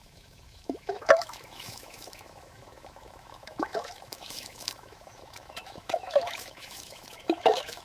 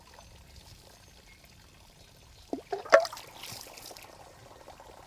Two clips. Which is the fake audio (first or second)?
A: first